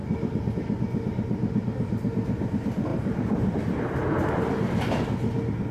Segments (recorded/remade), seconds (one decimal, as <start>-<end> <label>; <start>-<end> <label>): 0.0-0.5 remade; 0.5-2.9 recorded; 2.9-4.3 remade; 4.3-5.7 recorded